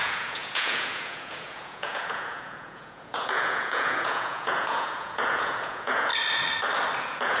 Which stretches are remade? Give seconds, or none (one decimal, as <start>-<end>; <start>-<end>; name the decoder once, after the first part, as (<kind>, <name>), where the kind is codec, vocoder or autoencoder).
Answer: 0.0-6.1 (vocoder, Vocos); 7.0-7.4